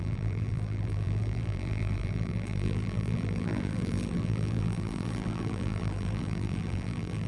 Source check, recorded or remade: remade